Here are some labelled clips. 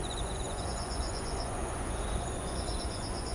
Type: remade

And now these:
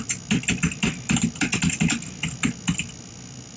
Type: recorded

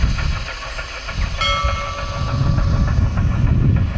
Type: recorded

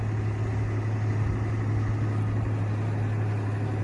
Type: recorded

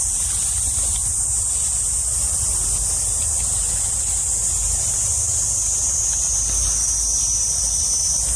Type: recorded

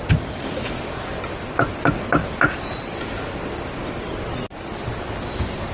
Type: recorded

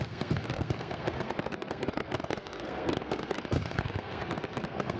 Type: remade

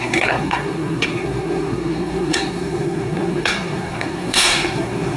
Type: remade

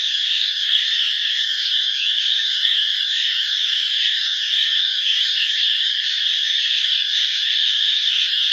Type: remade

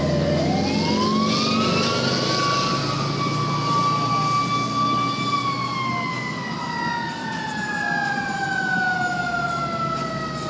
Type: recorded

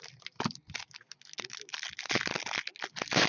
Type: recorded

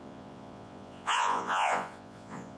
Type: remade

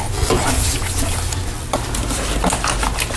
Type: recorded